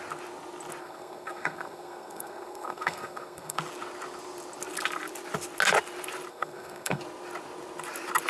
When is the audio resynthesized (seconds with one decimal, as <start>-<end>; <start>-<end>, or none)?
0.8-3.6; 6.3-7.0